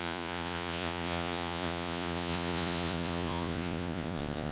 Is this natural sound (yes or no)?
no